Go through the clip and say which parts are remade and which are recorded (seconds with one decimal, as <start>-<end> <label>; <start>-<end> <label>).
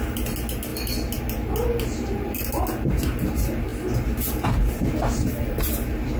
0.0-6.2 recorded